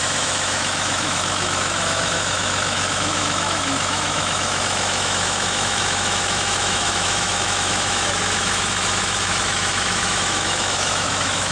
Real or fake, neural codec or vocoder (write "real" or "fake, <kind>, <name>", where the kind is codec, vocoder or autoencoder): fake, autoencoder, DAC-VAE